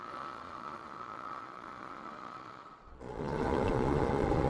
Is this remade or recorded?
remade